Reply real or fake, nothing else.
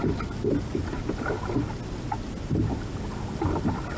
real